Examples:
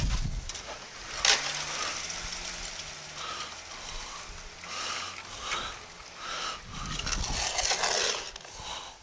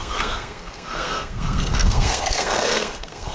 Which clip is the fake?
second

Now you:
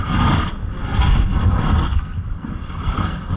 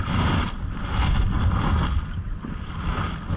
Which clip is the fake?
first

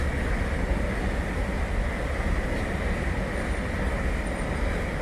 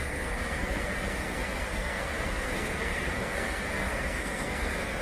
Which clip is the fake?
second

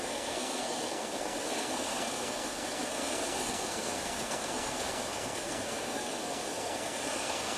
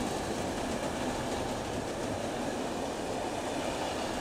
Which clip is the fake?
first